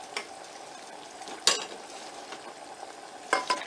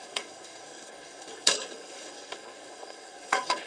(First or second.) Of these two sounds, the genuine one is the first